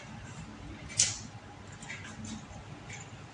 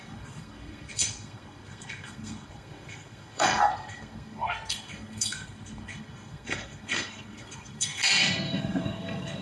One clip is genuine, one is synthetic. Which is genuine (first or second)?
first